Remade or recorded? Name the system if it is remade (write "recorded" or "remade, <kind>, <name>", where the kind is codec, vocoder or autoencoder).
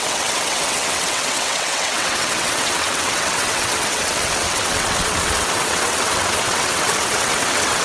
remade, vocoder, WaveNeXt